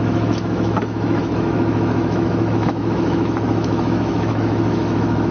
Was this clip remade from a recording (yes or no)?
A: yes